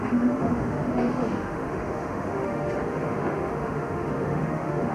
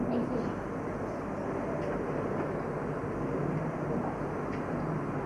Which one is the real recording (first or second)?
second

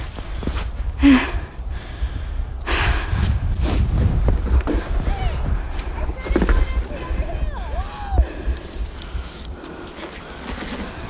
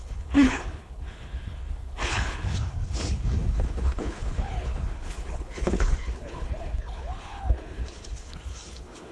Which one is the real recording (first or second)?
first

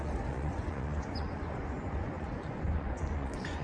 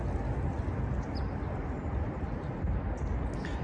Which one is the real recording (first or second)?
second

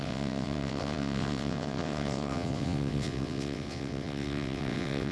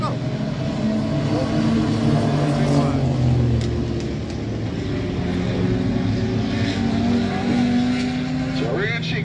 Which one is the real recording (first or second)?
second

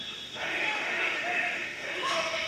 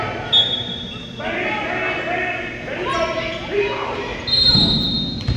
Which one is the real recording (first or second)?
second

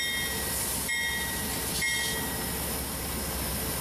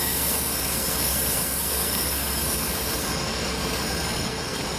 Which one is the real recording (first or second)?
first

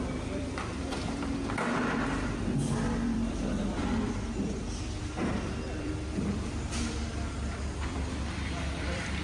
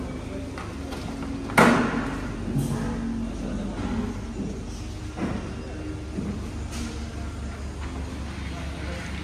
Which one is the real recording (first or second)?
second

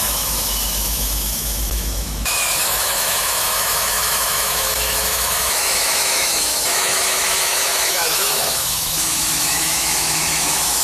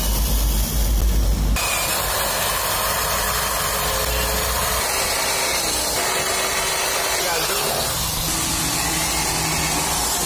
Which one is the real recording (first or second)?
second